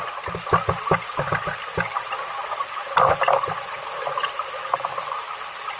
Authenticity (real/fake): real